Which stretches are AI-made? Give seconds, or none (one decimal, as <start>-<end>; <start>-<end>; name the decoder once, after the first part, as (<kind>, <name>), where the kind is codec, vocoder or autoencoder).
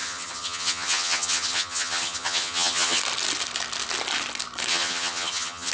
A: 0.0-3.0 (vocoder, HiFi-GAN); 4.7-5.7